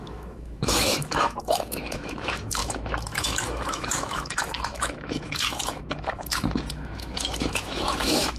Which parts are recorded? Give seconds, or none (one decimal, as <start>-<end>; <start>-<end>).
none